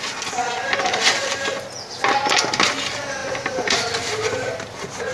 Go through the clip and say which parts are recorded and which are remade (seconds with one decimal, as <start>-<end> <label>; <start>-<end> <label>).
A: 0.0-0.4 recorded; 0.4-1.4 remade; 1.4-3.2 recorded; 3.2-4.5 remade; 4.5-5.1 recorded